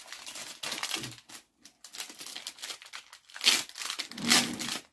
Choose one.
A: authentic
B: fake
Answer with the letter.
A